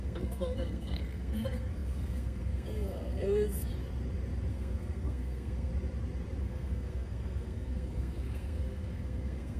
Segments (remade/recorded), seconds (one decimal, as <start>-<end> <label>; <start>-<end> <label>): 0.0-3.7 remade; 3.7-4.5 recorded; 4.5-5.7 remade; 5.7-6.4 recorded; 6.4-9.6 remade